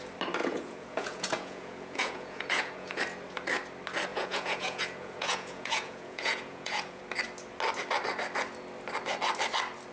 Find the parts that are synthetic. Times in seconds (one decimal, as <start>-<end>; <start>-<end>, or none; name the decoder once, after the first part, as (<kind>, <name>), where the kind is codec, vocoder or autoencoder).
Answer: 0.4-3.0 (vocoder, Vocos); 4.1-7.0